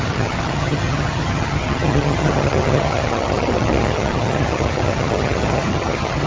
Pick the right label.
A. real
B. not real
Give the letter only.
B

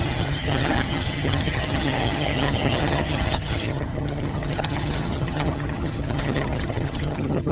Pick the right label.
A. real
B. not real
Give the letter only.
B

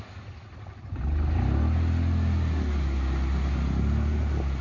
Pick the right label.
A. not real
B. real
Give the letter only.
B